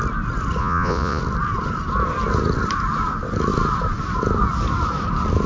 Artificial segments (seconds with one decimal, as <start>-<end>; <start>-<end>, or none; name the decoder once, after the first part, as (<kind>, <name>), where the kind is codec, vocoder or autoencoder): 0.6-1.2 (vocoder, Vocos)